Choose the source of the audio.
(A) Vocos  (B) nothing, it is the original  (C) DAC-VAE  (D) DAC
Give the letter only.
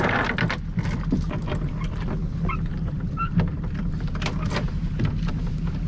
B